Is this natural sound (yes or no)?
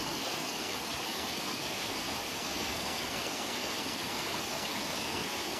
no